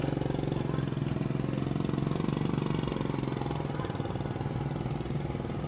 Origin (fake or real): real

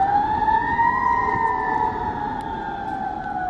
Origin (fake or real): fake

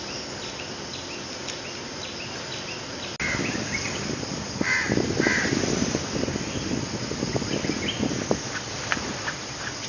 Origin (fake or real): real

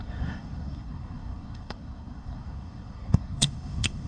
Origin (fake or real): fake